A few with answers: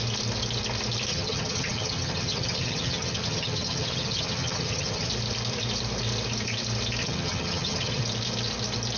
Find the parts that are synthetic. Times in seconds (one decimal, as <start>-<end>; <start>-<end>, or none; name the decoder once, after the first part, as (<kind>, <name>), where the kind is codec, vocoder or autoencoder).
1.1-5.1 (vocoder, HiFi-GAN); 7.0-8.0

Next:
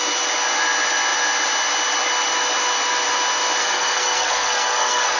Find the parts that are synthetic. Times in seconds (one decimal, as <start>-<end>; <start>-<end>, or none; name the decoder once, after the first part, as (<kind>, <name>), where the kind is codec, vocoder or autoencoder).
3.6-5.2 (codec, SNAC)

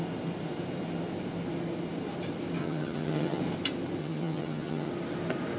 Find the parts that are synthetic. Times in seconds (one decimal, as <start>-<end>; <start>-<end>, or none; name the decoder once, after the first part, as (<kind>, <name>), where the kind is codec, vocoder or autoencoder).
2.6-3.4 (vocoder, HiFi-GAN); 4.0-4.9